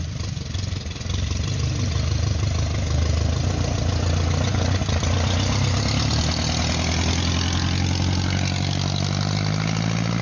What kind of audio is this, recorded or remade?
recorded